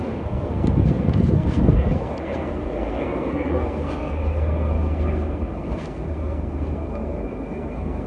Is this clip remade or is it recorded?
remade